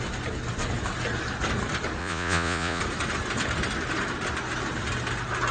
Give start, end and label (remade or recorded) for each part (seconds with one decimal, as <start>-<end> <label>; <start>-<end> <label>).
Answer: 0.0-2.0 recorded; 2.0-2.8 remade; 2.8-5.5 recorded